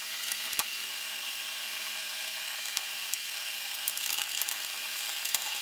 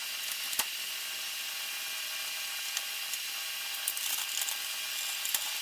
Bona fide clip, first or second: second